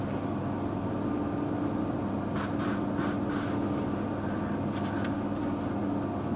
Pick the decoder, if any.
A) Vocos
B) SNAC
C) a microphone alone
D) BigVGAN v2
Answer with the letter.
C